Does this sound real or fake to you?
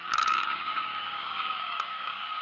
fake